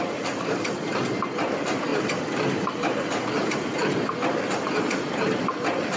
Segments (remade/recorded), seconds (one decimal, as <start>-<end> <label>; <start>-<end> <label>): 0.0-1.9 recorded; 1.9-4.1 remade; 4.1-6.0 recorded